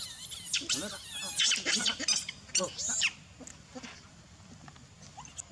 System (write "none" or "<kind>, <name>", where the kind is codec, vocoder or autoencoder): none